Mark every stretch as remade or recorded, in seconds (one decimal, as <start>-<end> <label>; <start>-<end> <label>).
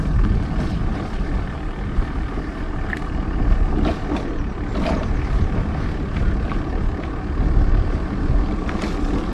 0.0-0.8 recorded; 0.8-3.4 remade; 3.4-9.3 recorded